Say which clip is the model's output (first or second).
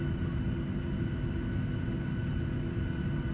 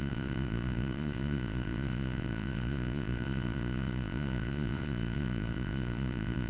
second